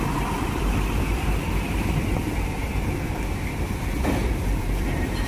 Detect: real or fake fake